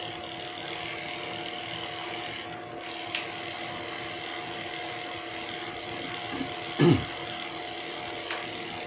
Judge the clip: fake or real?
real